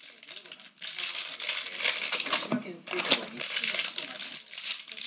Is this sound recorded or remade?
recorded